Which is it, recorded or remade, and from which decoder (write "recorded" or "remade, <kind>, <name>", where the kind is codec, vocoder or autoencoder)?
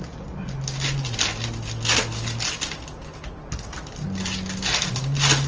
recorded